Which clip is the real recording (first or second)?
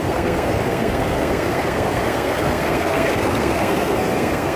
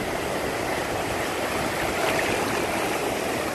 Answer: second